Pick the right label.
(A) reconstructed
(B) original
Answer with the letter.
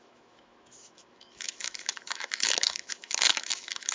A